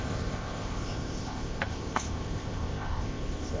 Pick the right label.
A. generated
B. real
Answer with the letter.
A